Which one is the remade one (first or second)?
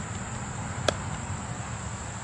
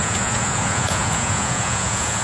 second